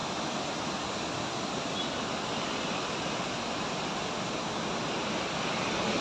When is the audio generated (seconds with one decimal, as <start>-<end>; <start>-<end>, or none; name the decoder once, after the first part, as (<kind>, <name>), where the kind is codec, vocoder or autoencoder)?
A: none